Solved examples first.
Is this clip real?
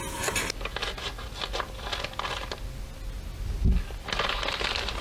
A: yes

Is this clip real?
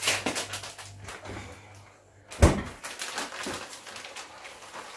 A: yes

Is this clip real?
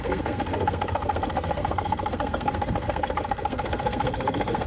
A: no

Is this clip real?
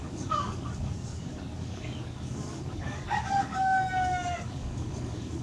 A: no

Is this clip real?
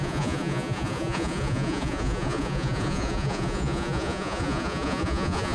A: no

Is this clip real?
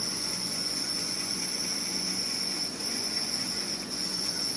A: no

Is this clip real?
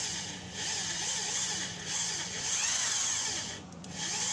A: no